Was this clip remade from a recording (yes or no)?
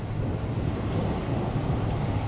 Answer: no